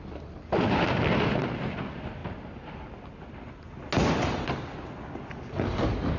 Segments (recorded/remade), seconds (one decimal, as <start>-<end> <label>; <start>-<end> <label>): 0.0-6.2 recorded